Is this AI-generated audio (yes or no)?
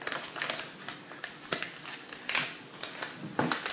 no